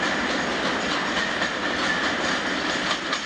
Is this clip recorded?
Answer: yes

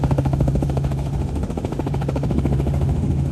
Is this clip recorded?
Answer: no